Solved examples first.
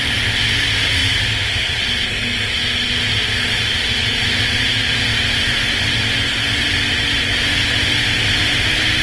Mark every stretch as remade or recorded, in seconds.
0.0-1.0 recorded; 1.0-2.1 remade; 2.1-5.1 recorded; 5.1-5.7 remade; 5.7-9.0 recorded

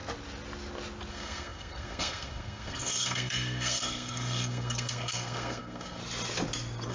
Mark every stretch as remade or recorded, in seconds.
0.0-1.1 recorded; 1.1-6.0 remade; 6.0-6.9 recorded

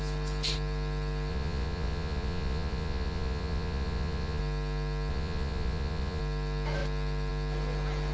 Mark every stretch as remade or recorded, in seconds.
0.0-1.3 recorded; 1.3-4.4 remade; 4.4-5.1 recorded; 5.1-6.2 remade; 6.2-8.1 recorded

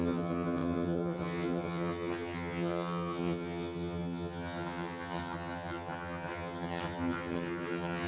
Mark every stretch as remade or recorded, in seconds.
0.0-8.1 remade

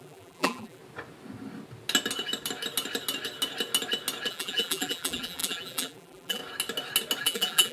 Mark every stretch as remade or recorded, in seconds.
0.0-0.8 remade; 0.8-4.3 recorded; 4.3-6.4 remade; 6.4-7.2 recorded; 7.2-7.7 remade